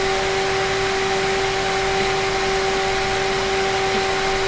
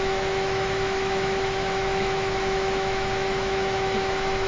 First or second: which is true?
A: first